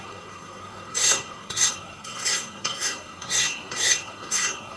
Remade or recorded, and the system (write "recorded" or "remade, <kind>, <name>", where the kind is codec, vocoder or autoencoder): remade, codec, SNAC